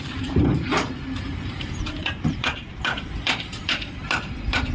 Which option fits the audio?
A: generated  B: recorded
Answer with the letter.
A